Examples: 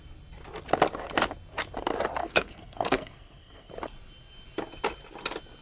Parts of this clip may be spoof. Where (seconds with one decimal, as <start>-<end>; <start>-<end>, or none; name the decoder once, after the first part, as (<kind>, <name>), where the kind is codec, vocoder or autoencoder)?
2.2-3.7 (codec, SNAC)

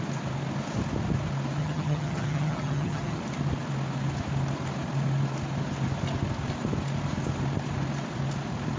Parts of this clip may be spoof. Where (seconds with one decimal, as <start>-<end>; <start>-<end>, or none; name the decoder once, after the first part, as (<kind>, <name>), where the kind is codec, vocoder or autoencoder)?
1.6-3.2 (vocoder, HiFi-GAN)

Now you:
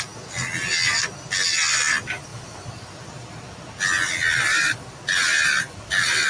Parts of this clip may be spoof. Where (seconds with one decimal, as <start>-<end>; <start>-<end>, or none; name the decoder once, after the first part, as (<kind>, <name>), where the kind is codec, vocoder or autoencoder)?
2.3-6.3 (vocoder, BigVGAN v2)